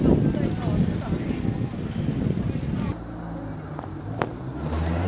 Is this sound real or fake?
real